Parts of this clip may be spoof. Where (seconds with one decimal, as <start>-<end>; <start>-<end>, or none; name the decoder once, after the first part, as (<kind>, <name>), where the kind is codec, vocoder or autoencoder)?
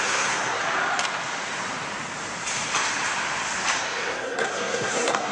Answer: 0.0-0.6 (codec, SNAC); 3.8-5.3